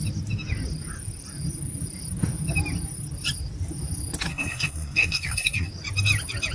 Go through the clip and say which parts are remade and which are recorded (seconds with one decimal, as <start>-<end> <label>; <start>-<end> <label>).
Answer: 0.0-4.3 recorded; 4.3-5.7 remade; 5.7-6.5 recorded